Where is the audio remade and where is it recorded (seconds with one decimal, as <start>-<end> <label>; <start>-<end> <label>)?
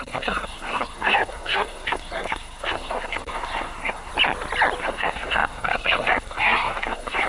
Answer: 0.0-4.1 remade; 4.1-4.8 recorded; 4.8-7.3 remade